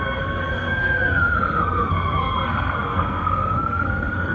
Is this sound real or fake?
fake